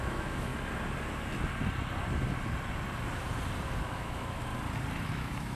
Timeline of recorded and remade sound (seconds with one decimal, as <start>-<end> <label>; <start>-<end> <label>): 0.0-0.5 remade; 0.5-3.8 recorded; 3.8-4.5 remade; 4.5-5.1 recorded; 5.1-5.5 remade